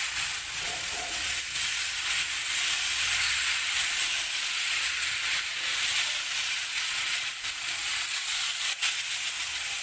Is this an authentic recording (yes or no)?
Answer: no